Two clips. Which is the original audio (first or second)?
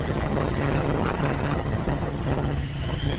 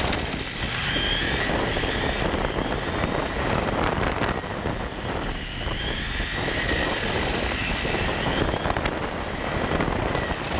second